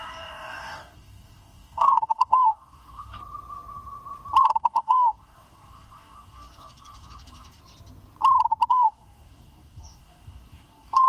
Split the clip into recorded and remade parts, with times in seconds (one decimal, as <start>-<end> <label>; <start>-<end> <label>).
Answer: 0.0-3.2 remade; 3.2-4.4 recorded; 4.4-7.6 remade; 7.6-8.7 recorded; 8.7-11.1 remade